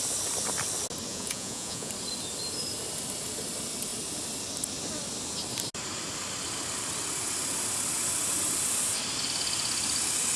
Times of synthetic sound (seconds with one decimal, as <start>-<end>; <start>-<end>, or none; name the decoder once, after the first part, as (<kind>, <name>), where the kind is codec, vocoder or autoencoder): 1.1-1.9 (vocoder, Vocos)